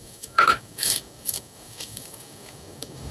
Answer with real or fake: fake